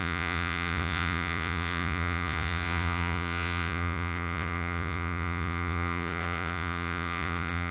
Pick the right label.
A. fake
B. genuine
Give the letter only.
A